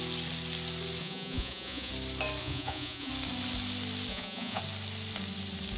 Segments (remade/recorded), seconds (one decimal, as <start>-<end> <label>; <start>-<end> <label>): 0.0-1.0 recorded; 1.0-1.9 remade; 1.9-2.4 recorded; 2.4-3.1 remade; 3.1-4.1 recorded; 4.1-4.6 remade; 4.6-5.8 recorded